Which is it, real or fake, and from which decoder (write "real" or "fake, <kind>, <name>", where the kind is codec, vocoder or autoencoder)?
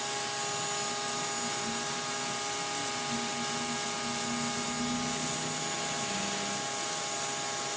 real